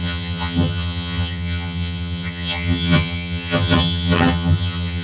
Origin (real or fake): fake